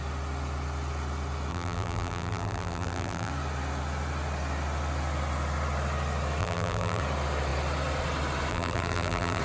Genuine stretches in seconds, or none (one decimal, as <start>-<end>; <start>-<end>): 0.0-1.5; 3.3-6.4; 7.0-8.5